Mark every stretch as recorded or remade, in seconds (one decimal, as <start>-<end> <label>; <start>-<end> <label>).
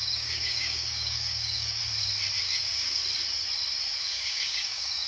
0.0-1.8 remade; 1.8-2.4 recorded; 2.4-3.0 remade; 3.0-4.1 recorded; 4.1-5.1 remade